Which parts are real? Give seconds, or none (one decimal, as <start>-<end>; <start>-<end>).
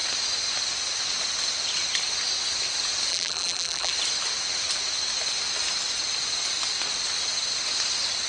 0.0-3.1; 3.9-8.3